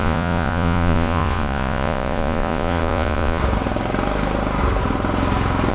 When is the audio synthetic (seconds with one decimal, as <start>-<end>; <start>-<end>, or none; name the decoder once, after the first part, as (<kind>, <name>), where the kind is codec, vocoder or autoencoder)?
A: 0.0-3.4 (vocoder, Vocos)